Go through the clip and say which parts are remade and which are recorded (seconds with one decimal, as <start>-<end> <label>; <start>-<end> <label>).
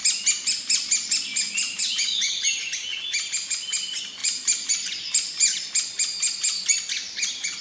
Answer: 0.0-4.2 recorded; 4.2-5.7 remade; 5.7-7.6 recorded